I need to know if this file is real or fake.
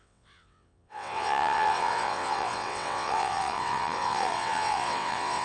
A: fake